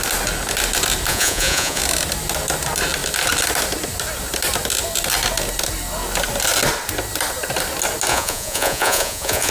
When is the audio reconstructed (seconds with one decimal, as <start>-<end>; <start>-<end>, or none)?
1.1-1.8; 8.1-9.5